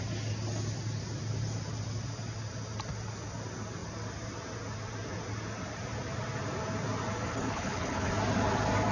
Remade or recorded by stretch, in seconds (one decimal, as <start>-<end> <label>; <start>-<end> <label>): 0.0-7.3 recorded; 7.3-8.1 remade; 8.1-8.9 recorded